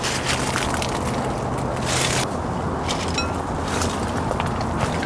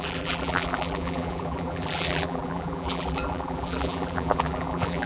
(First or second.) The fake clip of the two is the second